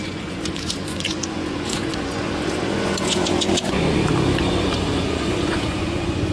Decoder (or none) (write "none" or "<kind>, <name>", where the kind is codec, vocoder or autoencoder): vocoder, Vocos